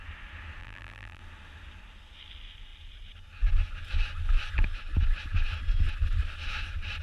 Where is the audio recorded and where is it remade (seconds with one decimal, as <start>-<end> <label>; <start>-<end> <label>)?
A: 0.0-0.6 recorded; 0.6-1.2 remade; 1.2-7.0 recorded